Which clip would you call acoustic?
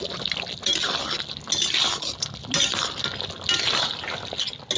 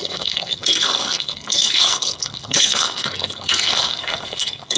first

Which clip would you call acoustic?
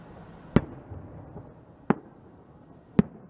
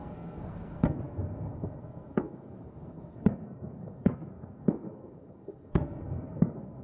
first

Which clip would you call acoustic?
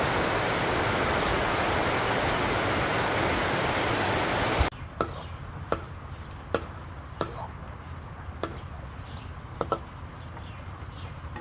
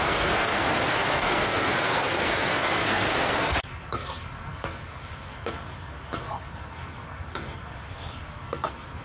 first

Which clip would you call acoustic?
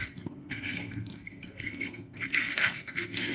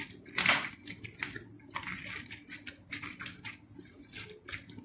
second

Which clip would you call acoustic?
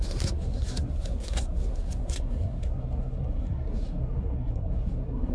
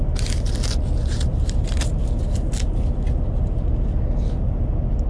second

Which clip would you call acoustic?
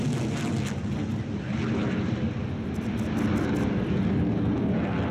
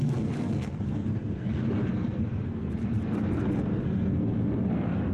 first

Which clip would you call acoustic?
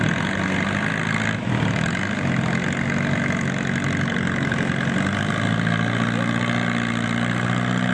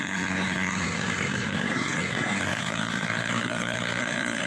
first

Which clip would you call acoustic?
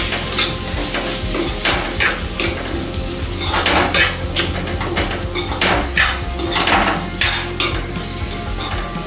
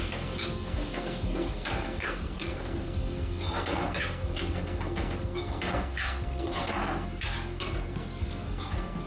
first